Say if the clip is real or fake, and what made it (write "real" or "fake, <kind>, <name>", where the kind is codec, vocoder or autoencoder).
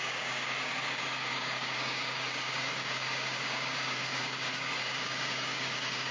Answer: fake, codec, DAC